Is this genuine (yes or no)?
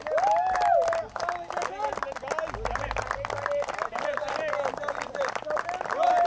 yes